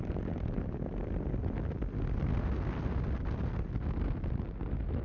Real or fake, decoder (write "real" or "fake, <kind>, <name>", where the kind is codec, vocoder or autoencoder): real